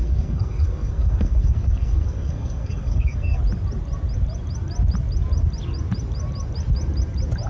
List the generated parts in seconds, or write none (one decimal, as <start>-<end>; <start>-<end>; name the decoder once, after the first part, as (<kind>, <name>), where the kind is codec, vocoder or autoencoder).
0.0-3.4 (codec, SNAC)